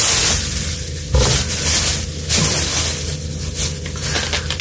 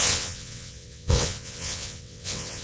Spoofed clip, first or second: second